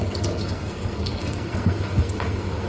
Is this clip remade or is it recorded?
remade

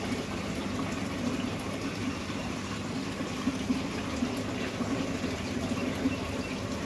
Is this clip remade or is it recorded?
recorded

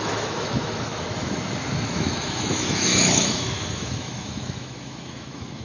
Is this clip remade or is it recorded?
remade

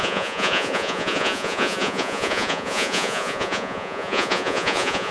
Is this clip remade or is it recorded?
remade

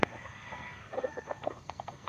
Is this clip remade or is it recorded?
remade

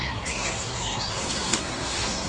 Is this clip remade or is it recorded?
remade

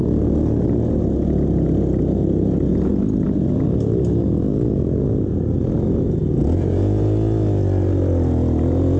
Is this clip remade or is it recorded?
recorded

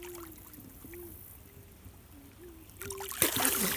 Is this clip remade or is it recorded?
recorded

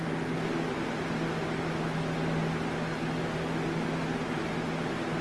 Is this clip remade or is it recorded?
recorded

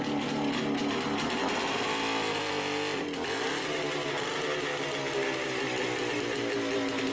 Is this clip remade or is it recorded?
recorded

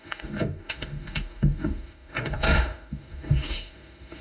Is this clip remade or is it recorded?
remade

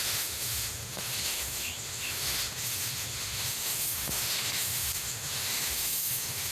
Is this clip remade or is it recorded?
remade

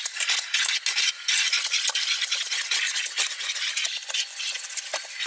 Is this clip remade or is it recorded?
recorded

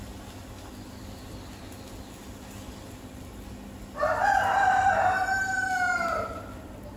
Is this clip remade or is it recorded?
recorded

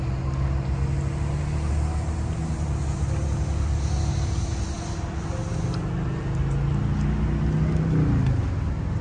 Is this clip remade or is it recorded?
recorded